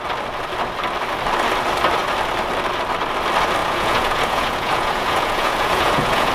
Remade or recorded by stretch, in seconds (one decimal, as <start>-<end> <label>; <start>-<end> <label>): 0.0-3.6 recorded; 3.6-6.3 remade